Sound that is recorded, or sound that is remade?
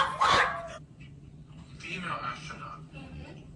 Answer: remade